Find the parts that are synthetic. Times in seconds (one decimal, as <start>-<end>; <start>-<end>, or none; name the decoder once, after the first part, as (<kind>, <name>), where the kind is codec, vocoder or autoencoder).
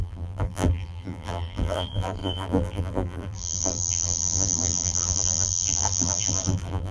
0.0-6.9 (vocoder, BigVGAN v2)